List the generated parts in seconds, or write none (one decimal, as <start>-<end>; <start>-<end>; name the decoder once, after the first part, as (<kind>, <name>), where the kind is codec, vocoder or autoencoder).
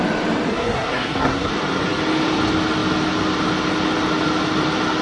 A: 0.5-1.5 (codec, SNAC)